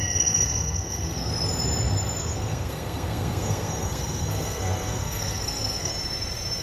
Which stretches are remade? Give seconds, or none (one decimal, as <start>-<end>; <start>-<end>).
0.0-1.3; 2.2-5.9